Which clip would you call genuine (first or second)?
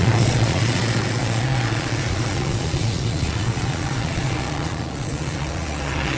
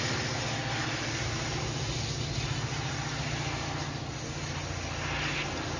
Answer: second